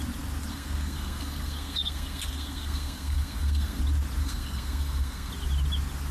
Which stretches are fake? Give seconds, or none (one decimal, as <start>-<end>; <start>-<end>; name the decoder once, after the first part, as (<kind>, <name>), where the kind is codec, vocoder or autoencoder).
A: 0.5-3.8 (codec, SNAC); 4.2-5.3